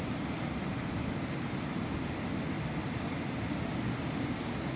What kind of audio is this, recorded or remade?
recorded